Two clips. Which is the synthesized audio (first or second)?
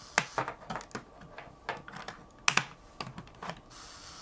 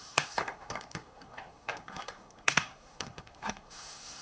second